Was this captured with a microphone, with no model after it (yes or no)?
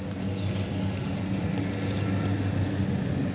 yes